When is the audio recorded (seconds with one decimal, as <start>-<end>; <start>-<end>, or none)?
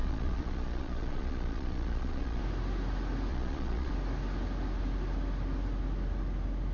2.4-3.3; 3.9-6.7